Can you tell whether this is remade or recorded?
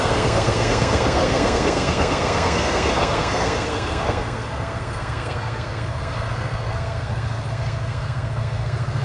remade